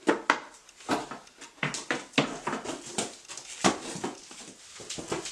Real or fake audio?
real